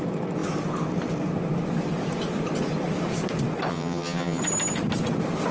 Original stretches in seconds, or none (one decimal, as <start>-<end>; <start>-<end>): 0.0-3.7; 4.4-5.5